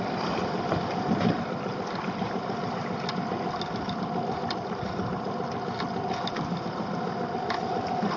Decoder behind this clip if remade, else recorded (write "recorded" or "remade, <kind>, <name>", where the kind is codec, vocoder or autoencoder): recorded